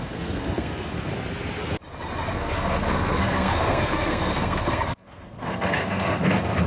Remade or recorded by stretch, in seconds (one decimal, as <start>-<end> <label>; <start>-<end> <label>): 0.0-1.1 remade; 1.1-2.3 recorded; 2.3-6.7 remade